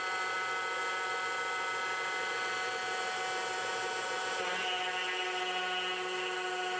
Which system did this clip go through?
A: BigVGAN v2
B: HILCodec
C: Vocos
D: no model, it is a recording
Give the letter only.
D